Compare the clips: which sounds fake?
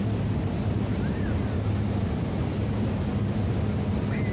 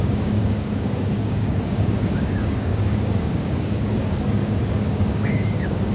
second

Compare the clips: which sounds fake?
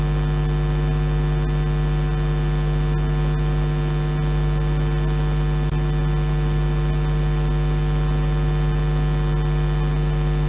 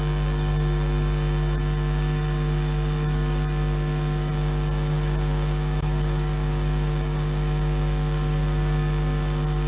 second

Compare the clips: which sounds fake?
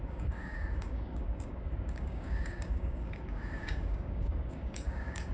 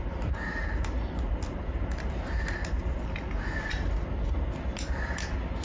first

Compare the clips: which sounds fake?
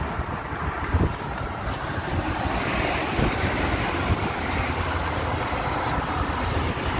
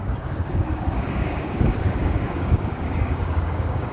second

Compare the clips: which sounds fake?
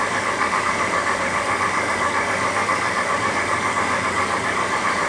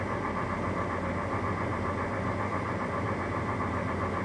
first